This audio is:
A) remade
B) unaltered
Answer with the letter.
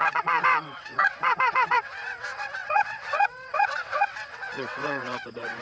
A